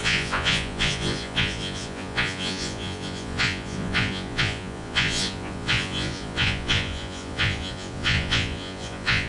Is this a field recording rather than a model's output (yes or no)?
no